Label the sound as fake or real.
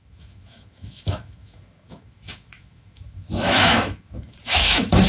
fake